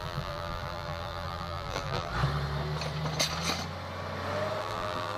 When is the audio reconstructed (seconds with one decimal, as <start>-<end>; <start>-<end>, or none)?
0.0-2.1; 4.6-5.2